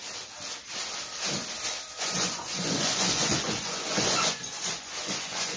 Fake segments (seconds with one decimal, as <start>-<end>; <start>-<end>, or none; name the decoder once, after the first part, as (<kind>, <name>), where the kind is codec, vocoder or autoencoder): 1.9-5.6 (vocoder, Vocos)